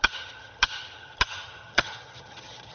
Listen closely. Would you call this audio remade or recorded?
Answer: remade